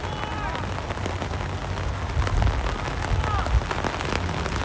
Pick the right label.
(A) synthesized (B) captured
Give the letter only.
B